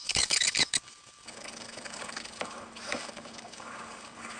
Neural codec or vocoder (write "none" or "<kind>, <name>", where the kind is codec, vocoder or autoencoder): codec, DAC